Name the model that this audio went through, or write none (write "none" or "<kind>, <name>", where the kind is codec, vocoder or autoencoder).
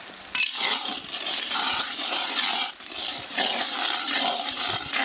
none